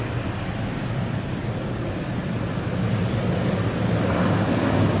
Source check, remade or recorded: recorded